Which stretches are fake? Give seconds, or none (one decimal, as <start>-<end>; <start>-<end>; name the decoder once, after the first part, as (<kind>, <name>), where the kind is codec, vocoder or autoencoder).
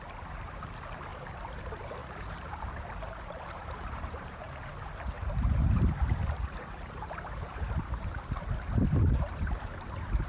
0.0-1.1 (vocoder, BigVGAN v2); 1.6-10.3